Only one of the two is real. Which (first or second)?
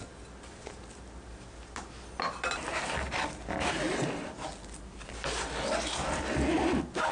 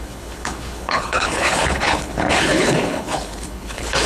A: first